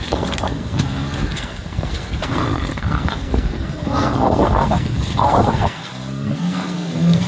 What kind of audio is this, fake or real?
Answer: fake